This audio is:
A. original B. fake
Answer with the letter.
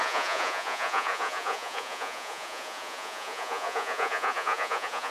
B